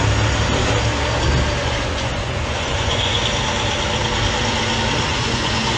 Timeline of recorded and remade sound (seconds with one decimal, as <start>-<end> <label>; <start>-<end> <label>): 0.0-1.6 recorded; 1.6-3.2 remade; 3.2-5.1 recorded; 5.1-5.8 remade